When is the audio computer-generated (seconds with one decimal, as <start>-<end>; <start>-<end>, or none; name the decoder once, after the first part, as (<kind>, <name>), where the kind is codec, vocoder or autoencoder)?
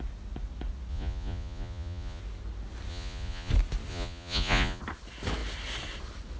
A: 0.9-2.2 (vocoder, Vocos); 2.9-3.5; 3.9-4.8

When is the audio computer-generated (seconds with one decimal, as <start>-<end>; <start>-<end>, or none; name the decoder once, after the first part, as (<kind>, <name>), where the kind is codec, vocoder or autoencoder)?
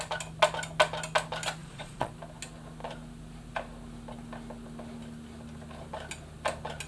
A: 1.6-2.1 (vocoder, Vocos)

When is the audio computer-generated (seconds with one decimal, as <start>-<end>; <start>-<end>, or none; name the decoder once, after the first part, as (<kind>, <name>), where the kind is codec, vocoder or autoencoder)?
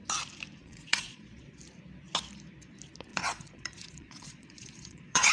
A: 0.6-1.6 (vocoder, Vocos); 3.1-5.3